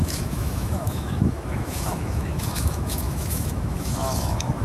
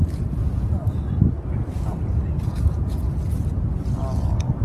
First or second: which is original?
second